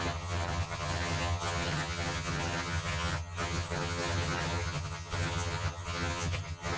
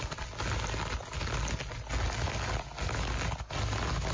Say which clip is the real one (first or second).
second